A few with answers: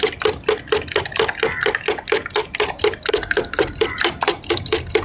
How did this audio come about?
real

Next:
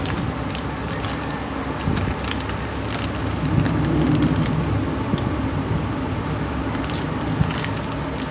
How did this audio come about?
real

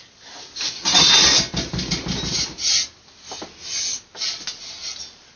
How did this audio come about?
real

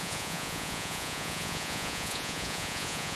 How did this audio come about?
fake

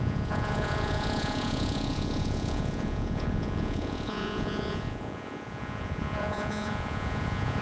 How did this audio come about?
fake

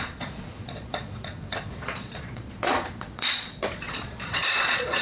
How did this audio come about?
fake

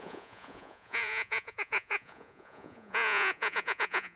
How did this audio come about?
fake